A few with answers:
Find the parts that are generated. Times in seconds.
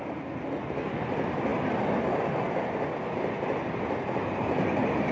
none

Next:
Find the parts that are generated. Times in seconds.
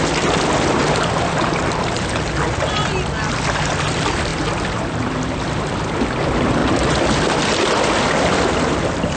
none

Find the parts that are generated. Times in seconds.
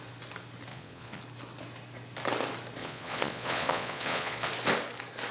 0.7-1.2 (vocoder, Vocos); 2.8-4.5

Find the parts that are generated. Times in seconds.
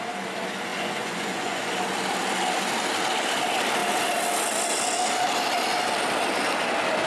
0.7-1.7 (vocoder, Vocos)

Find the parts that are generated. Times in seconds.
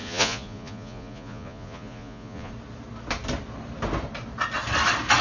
0.0-2.5 (vocoder, Vocos)